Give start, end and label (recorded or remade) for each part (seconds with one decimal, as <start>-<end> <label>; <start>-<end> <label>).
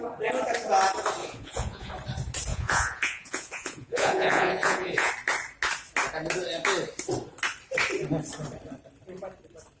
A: 0.0-1.2 recorded; 1.2-1.9 remade; 1.9-2.5 recorded; 2.5-5.1 remade; 5.1-9.8 recorded